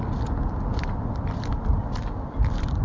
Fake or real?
real